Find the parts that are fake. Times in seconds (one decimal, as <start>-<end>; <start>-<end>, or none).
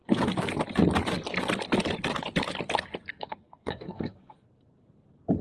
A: 3.1-4.5